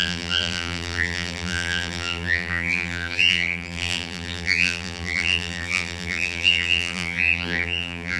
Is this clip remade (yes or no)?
yes